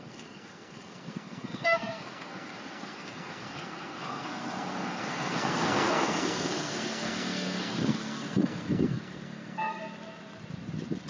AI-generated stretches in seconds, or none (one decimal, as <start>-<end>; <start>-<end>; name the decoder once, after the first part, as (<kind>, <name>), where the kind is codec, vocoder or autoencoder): 0.0-9.8 (codec, SNAC)

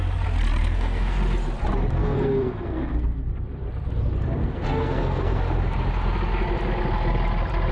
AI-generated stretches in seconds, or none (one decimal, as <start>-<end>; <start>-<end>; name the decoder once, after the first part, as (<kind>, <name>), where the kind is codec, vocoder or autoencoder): 0.6-1.2 (codec, SNAC); 2.0-3.3; 4.4-5.4

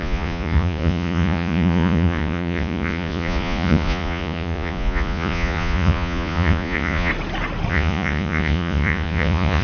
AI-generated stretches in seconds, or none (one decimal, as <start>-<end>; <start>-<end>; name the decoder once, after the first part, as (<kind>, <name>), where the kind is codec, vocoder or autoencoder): 0.0-7.1 (vocoder, Vocos); 7.7-9.6

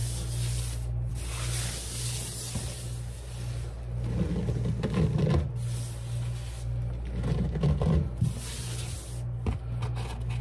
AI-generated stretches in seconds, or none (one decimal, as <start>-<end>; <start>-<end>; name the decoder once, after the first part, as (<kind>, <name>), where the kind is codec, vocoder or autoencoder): none

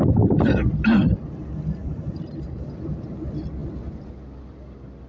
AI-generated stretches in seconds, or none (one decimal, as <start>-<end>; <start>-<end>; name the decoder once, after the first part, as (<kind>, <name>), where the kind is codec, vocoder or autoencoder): 1.8-2.7 (vocoder, BigVGAN v2)

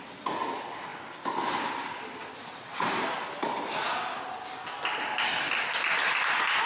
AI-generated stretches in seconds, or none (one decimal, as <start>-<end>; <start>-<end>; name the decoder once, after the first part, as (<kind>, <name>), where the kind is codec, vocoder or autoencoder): none